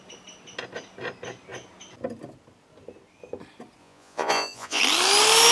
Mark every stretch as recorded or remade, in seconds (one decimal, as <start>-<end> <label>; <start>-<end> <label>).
0.0-3.8 recorded; 3.8-4.8 remade; 4.8-5.5 recorded